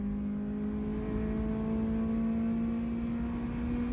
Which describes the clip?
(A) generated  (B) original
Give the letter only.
B